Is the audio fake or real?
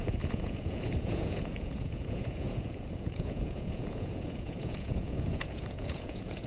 fake